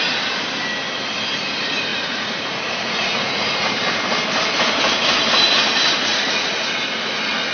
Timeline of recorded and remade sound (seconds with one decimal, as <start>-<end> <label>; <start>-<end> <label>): 0.0-1.9 recorded; 1.9-3.7 remade; 3.7-6.1 recorded; 6.1-6.8 remade; 6.8-7.5 recorded